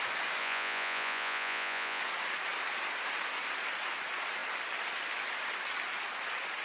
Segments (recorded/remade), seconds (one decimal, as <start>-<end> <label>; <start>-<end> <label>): 0.0-0.4 recorded; 0.4-2.0 remade; 2.0-6.6 recorded